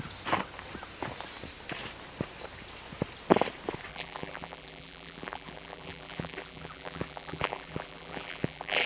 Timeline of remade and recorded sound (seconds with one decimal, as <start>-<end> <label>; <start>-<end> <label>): 0.0-3.9 recorded; 3.9-8.9 remade